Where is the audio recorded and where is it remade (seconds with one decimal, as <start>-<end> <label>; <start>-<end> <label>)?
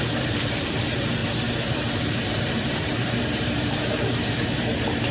0.0-5.1 remade